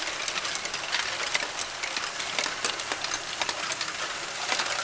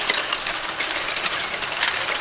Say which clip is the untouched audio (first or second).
first